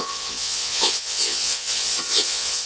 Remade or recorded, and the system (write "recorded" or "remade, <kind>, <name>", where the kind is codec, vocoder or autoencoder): remade, vocoder, Vocos